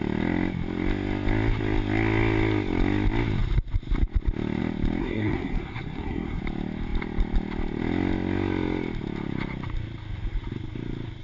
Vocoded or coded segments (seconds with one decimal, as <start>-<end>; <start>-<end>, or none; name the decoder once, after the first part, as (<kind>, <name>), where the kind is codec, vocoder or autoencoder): 5.0-6.4 (codec, SNAC)